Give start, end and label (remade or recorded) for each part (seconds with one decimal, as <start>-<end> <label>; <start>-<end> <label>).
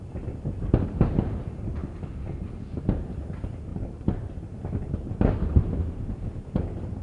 0.0-3.7 recorded; 3.7-4.8 remade; 4.8-7.0 recorded